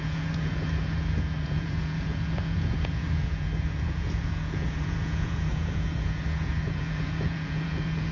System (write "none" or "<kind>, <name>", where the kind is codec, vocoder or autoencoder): vocoder, Vocos